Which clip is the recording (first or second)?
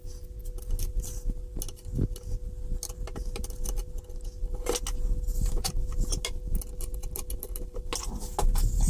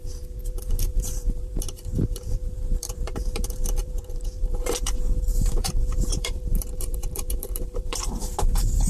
first